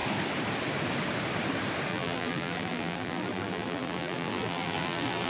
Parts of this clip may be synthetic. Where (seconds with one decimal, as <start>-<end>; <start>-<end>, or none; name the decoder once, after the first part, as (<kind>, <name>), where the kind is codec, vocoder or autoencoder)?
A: 1.9-5.3 (vocoder, BigVGAN v2)